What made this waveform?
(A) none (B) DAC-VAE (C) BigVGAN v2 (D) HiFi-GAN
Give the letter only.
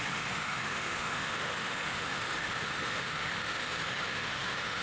B